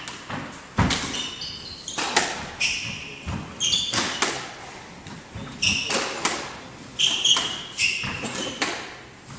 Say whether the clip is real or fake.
real